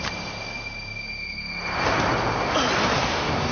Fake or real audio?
real